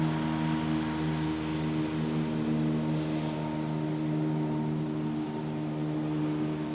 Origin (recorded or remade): recorded